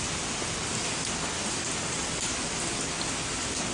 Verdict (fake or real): real